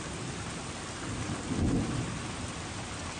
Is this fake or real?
real